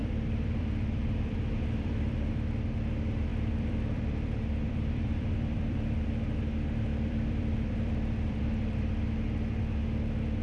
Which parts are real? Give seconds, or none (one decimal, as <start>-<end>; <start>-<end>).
2.3-3.3; 6.1-6.9; 8.9-10.4